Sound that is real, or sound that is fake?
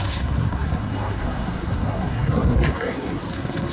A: fake